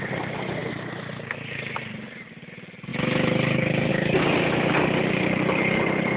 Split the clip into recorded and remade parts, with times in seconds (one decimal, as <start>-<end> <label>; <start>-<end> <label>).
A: 0.0-6.2 recorded

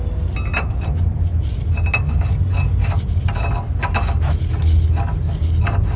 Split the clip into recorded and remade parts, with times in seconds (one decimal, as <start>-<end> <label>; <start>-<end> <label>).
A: 0.0-6.0 recorded

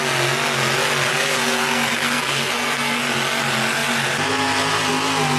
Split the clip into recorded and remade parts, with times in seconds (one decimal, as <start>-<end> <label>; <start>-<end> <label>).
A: 0.0-1.1 recorded; 1.1-3.0 remade; 3.0-5.4 recorded

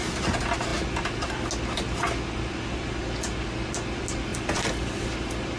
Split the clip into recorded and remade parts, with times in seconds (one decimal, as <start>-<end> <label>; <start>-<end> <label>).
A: 0.0-5.6 recorded